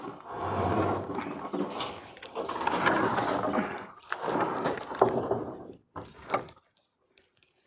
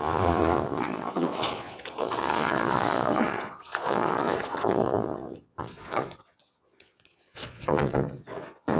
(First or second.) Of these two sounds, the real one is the first